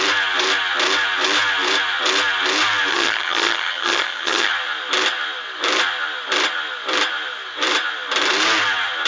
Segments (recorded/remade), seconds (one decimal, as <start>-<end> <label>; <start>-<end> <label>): 0.0-2.9 recorded; 2.9-4.5 remade; 4.5-9.1 recorded